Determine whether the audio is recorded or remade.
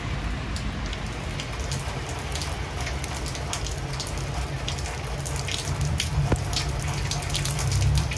recorded